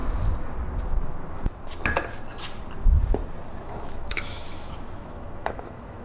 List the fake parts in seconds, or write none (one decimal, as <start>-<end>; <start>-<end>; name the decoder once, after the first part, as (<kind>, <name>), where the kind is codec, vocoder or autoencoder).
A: 3.6-6.0 (autoencoder, DAC-VAE)